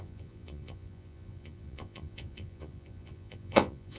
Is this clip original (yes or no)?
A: no